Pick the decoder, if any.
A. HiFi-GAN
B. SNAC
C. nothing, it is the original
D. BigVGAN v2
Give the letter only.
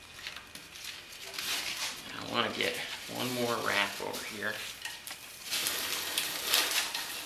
C